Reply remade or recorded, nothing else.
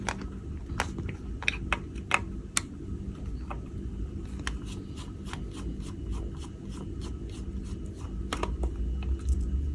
recorded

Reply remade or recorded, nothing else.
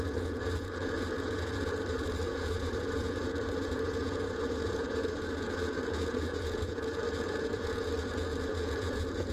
remade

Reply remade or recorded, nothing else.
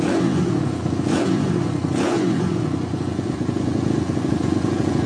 remade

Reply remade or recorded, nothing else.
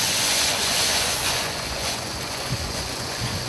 remade